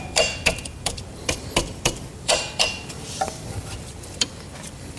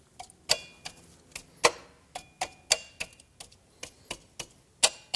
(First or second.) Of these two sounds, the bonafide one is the second